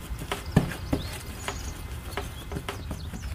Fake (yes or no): no